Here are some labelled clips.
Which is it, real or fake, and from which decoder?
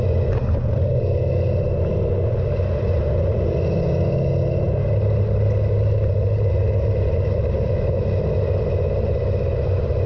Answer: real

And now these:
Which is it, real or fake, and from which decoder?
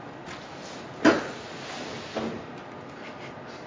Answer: real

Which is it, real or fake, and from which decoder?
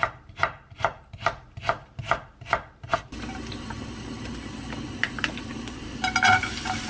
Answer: real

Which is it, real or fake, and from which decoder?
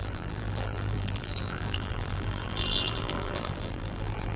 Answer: fake, vocoder, BigVGAN v2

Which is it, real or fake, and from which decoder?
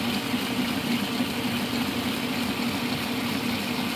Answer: real